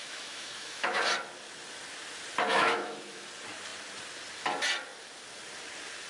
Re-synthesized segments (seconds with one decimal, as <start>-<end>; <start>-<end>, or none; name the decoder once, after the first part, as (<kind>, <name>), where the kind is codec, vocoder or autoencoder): 0.0-1.0 (autoencoder, DAC-VAE); 2.5-3.3